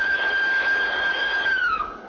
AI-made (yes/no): yes